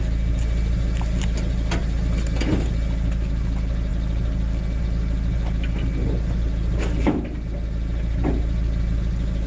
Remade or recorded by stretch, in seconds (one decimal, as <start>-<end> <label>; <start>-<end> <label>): 0.0-9.5 recorded